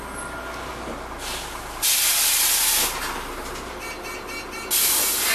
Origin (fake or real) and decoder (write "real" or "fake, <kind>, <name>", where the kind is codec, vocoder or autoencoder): real